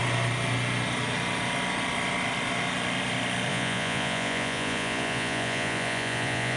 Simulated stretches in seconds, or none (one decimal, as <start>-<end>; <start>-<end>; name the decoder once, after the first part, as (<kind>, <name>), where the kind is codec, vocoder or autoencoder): 3.5-6.6 (vocoder, Vocos)